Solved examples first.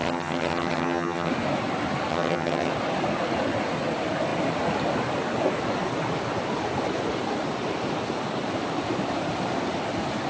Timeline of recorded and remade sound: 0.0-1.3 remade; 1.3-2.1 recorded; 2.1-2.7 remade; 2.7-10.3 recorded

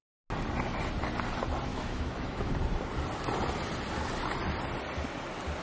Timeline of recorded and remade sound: 0.0-1.7 recorded; 1.7-2.5 remade; 2.5-5.6 recorded